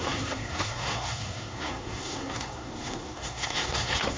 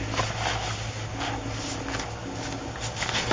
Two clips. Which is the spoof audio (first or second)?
first